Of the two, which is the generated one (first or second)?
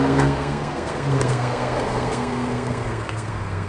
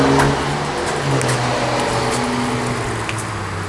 first